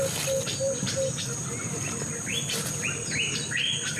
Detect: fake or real fake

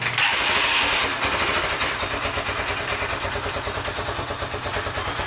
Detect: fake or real real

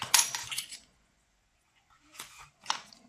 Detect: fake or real fake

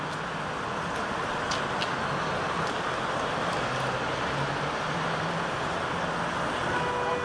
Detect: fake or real real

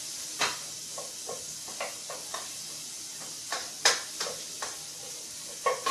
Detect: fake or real real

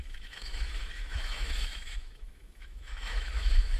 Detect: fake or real fake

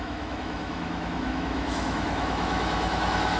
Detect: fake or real fake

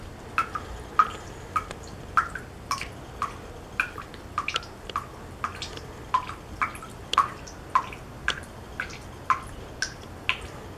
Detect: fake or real real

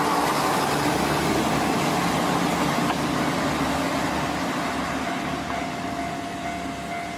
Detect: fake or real real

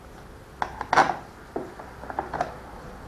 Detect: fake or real real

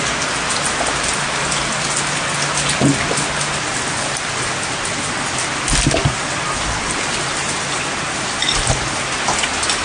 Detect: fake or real real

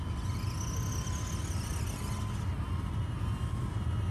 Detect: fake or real real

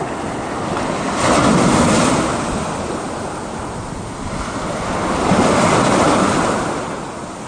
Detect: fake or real real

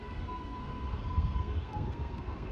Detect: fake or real fake